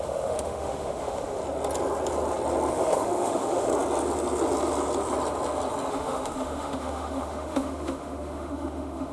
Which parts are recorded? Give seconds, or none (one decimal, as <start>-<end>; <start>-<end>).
1.4-2.7; 3.7-5.9